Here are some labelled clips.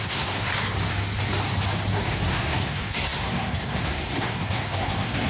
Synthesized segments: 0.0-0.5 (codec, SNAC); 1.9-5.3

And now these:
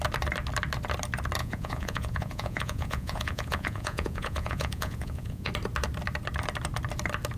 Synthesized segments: 1.4-5.5 (vocoder, Vocos)

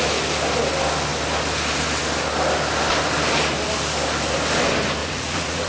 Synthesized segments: 5.0-5.7 (vocoder, Vocos)

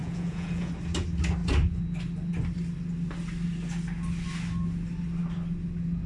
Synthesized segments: 0.0-0.7 (vocoder, Vocos)

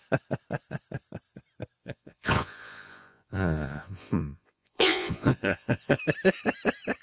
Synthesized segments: 1.8-6.0 (vocoder, Vocos)

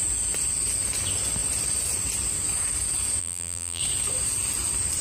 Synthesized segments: 3.2-3.8 (vocoder, BigVGAN v2)